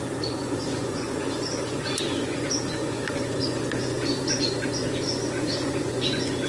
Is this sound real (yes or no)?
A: no